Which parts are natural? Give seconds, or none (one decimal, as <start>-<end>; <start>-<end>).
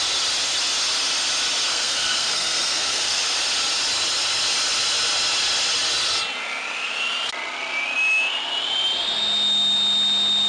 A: 0.0-1.7; 3.2-10.5